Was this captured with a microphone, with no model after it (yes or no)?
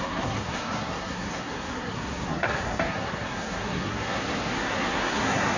no